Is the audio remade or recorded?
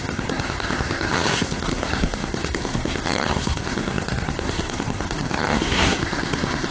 remade